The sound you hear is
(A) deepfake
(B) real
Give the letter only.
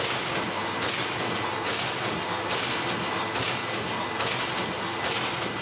B